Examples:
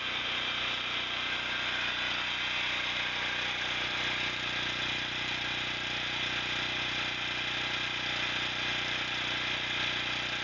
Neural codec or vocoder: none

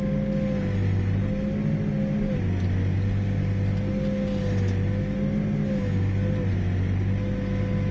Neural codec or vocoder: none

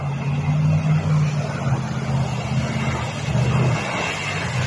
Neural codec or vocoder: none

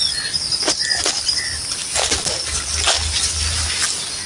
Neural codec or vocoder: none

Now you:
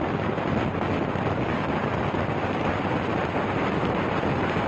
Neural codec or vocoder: none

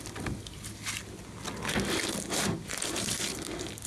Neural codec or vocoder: none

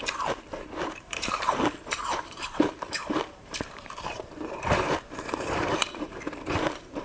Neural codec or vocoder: vocoder, BigVGAN v2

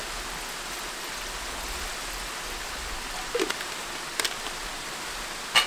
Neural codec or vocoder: none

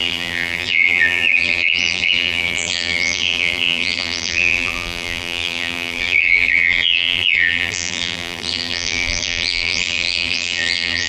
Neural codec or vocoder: vocoder, BigVGAN v2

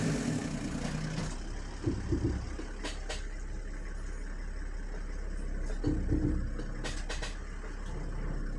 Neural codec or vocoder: none